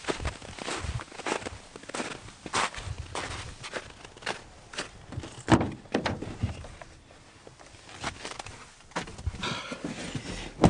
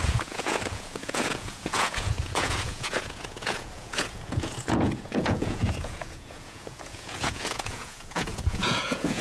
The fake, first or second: second